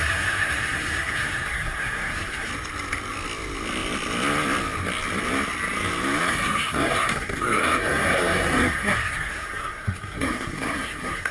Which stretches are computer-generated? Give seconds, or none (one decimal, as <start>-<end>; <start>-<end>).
0.0-2.5; 6.3-11.3